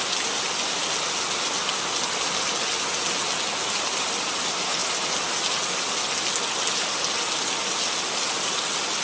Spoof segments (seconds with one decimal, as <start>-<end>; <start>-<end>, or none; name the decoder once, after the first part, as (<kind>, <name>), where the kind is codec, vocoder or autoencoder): none